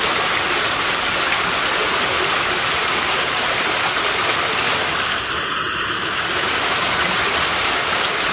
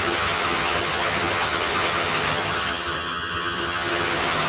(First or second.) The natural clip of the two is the first